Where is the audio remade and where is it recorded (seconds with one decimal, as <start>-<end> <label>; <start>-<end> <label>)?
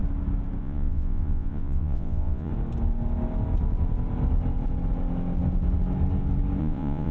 0.0-0.6 recorded; 0.6-2.5 remade; 2.5-6.6 recorded; 6.6-7.1 remade